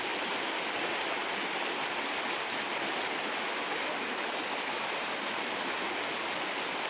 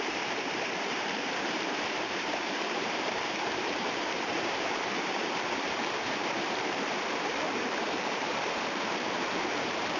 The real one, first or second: first